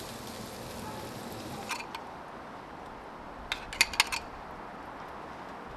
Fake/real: real